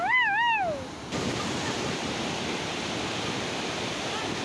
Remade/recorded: recorded